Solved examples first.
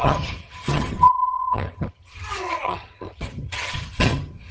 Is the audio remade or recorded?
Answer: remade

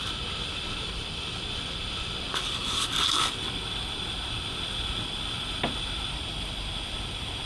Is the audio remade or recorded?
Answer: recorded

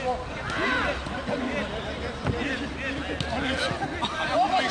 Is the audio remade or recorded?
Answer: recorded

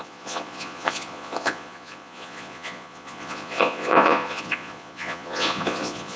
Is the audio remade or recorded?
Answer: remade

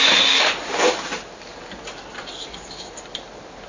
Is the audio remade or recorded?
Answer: recorded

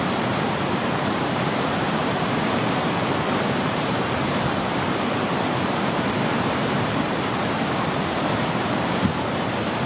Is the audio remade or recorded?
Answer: remade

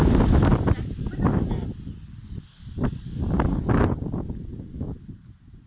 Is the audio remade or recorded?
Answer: recorded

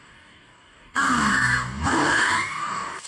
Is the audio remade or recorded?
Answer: remade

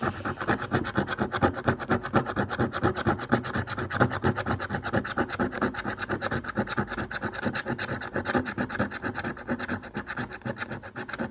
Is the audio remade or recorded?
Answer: recorded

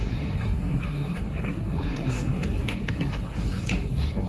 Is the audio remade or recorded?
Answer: remade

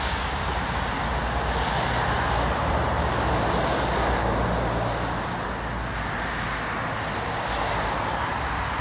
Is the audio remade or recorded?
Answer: recorded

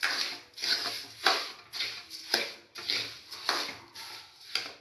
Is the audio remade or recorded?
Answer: recorded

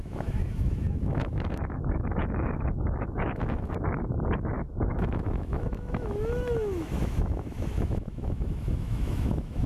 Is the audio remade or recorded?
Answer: remade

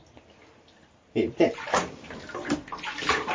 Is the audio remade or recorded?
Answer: recorded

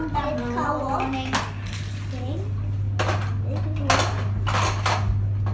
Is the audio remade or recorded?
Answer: recorded